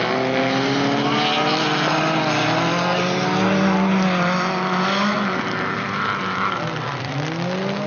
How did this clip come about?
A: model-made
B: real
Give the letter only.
B